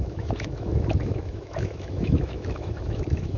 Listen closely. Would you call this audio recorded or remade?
remade